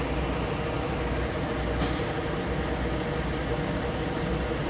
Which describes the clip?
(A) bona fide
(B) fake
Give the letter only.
A